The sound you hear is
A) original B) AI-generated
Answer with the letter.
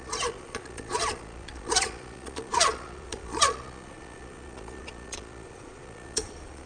B